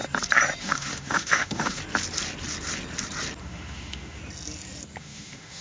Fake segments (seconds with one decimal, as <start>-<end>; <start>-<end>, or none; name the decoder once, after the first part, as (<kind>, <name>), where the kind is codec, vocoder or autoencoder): 0.6-1.8 (autoencoder, DAC-VAE); 3.4-4.2; 5.0-5.6